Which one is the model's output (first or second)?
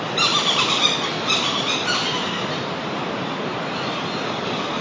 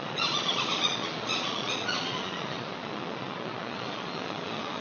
second